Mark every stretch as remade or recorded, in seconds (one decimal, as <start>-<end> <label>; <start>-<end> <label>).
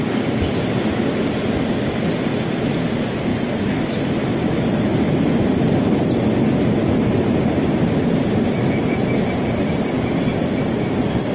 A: 0.0-7.0 recorded; 7.0-9.8 remade; 9.8-11.3 recorded